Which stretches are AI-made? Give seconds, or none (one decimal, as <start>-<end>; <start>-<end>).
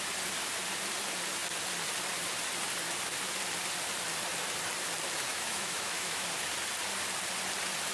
5.3-6.3